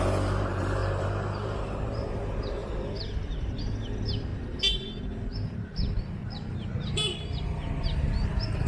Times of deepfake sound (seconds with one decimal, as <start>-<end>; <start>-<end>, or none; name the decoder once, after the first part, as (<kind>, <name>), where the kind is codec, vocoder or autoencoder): 0.0-6.2 (vocoder, BigVGAN v2); 7.8-8.7